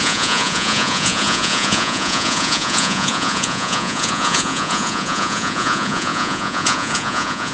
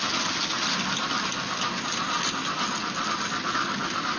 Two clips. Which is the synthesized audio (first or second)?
first